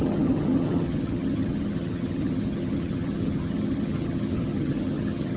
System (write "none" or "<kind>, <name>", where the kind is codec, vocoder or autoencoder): vocoder, HiFi-GAN